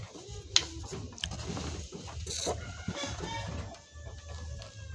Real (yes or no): yes